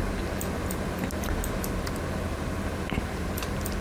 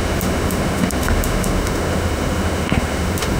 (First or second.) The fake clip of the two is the second